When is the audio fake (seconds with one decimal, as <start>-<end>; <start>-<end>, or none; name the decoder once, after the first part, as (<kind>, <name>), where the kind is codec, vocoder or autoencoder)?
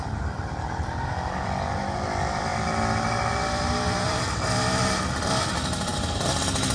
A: none